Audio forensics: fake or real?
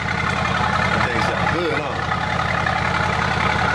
real